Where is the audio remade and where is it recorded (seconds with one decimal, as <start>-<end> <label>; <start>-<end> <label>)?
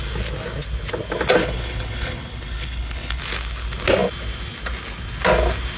0.0-1.4 recorded; 1.4-3.2 remade; 3.2-5.8 recorded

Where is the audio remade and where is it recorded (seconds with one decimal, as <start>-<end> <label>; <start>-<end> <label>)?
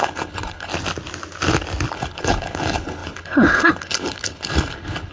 0.0-0.7 remade; 0.7-1.9 recorded; 1.9-5.1 remade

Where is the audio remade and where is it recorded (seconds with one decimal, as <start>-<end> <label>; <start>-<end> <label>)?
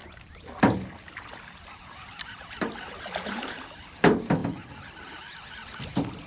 0.0-6.3 recorded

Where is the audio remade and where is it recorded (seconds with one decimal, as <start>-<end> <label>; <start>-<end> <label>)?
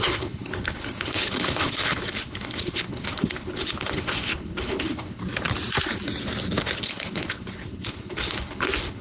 0.0-5.2 remade; 5.2-6.6 recorded; 6.6-9.0 remade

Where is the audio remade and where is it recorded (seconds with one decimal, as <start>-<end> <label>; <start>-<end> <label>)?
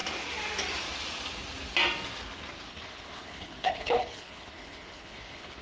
0.0-2.7 recorded; 2.7-5.6 remade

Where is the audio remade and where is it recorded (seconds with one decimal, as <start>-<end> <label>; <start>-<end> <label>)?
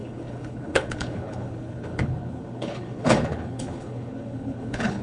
0.0-5.0 remade